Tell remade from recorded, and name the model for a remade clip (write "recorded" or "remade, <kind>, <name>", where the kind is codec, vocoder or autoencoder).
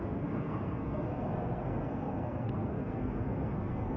remade, codec, SNAC